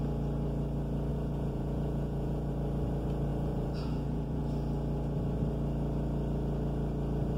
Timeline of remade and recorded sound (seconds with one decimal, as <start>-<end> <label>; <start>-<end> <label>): 0.0-1.1 recorded; 1.1-2.5 remade; 2.5-3.3 recorded; 3.3-4.4 remade; 4.4-7.4 recorded